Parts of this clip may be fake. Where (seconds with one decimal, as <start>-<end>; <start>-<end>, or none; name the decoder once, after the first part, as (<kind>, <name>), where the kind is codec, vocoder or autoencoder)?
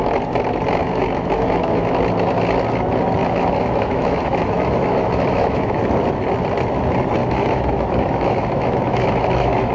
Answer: 0.8-1.9 (autoencoder, DAC-VAE); 3.2-5.8; 7.2-9.7